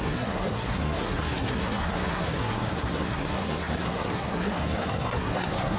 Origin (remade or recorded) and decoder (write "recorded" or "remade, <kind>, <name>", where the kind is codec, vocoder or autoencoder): remade, codec, SNAC